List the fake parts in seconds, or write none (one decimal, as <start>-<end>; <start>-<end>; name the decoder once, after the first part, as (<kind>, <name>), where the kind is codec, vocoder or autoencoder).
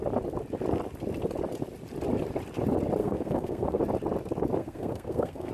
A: 3.0-3.8 (codec, SNAC); 4.6-5.5